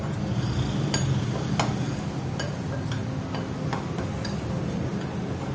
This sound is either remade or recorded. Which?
recorded